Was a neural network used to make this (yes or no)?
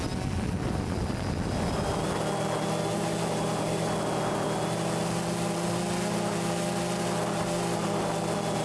no